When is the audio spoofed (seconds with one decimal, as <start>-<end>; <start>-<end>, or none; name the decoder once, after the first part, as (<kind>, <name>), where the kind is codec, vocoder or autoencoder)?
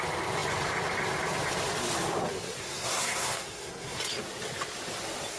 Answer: 2.6-4.0 (codec, SNAC)